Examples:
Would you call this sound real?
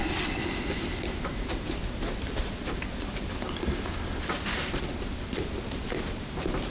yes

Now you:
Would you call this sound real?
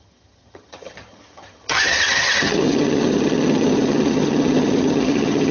no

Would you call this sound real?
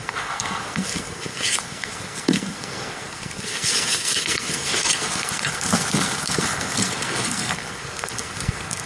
no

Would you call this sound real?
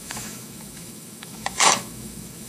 no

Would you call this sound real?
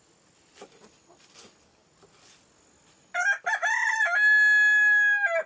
yes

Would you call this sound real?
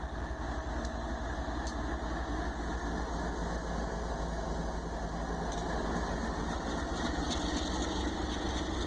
yes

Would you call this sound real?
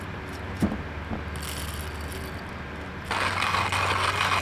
yes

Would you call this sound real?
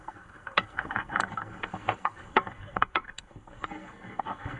no